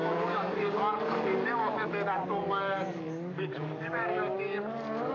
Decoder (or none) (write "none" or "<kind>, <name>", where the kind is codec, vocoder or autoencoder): codec, DAC